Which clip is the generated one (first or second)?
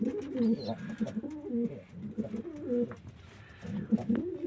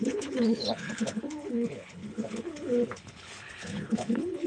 second